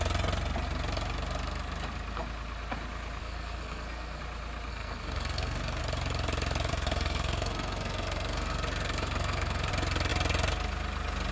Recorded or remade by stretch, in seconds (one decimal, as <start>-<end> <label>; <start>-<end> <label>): 0.0-3.2 recorded; 3.2-4.2 remade; 4.2-4.7 recorded; 4.7-5.8 remade; 5.8-6.7 recorded; 6.7-9.7 remade; 9.7-11.3 recorded